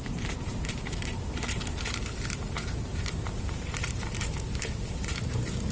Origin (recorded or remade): remade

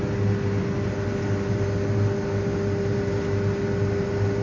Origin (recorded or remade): recorded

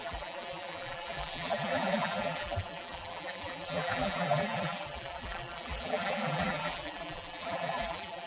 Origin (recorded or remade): remade